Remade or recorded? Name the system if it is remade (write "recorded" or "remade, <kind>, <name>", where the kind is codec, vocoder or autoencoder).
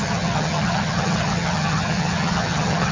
remade, vocoder, HiFi-GAN